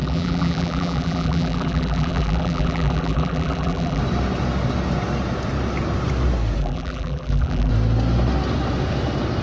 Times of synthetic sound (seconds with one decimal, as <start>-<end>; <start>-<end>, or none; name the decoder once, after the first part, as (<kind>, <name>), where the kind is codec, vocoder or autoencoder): 0.0-4.0 (vocoder, BigVGAN v2); 6.6-7.7